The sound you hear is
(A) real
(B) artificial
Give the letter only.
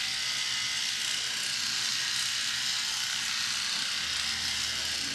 A